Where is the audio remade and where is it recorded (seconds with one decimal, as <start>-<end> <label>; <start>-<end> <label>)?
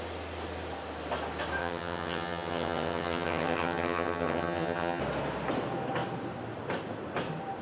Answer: 0.0-1.6 recorded; 1.6-5.0 remade; 5.0-7.6 recorded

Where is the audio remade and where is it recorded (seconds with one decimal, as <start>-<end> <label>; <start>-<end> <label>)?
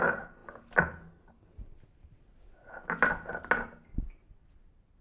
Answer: 0.0-5.0 recorded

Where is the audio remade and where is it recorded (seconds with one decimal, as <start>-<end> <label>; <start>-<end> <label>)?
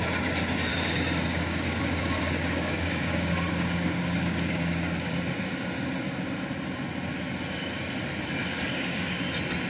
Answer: 0.0-0.7 recorded; 0.7-5.1 remade; 5.1-8.4 recorded; 8.4-9.2 remade; 9.2-9.7 recorded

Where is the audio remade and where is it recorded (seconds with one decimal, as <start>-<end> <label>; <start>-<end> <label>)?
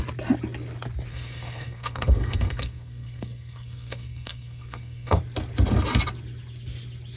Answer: 0.0-1.1 recorded; 1.1-5.2 remade; 5.2-7.2 recorded